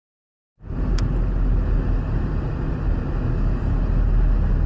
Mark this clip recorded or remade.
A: recorded